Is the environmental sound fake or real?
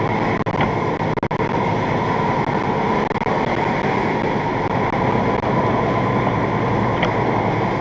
real